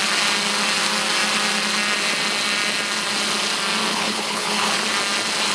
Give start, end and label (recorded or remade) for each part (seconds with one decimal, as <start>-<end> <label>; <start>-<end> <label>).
0.0-3.9 recorded; 3.9-4.8 remade; 4.8-5.5 recorded